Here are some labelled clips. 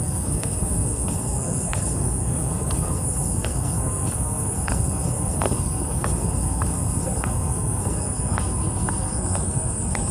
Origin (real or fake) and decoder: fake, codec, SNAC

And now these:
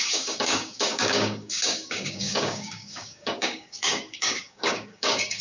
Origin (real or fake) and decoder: fake, codec, DAC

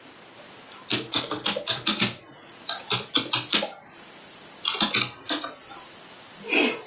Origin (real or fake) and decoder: real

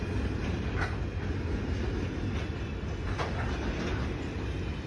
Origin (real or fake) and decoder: real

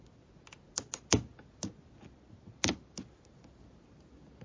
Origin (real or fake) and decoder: real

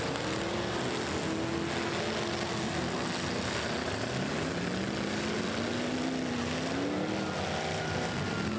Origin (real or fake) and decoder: real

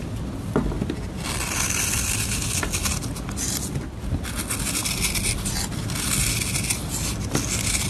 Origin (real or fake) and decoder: real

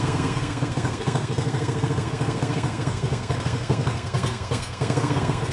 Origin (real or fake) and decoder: fake, codec, SNAC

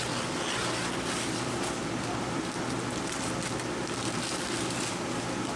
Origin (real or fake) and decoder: real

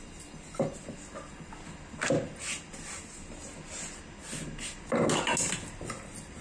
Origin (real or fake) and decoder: real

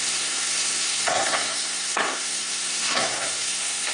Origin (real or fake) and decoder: fake, codec, SNAC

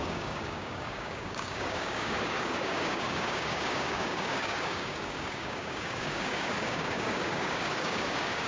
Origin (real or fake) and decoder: fake, codec, DAC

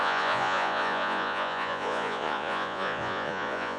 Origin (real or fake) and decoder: fake, vocoder, Vocos